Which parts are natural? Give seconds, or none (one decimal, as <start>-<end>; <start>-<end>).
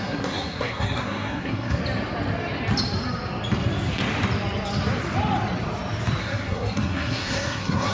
1.8-6.2